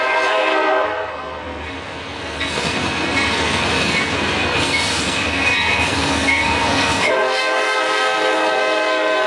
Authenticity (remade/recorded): remade